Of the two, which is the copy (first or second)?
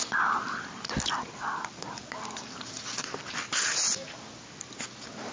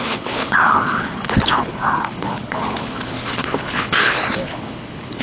second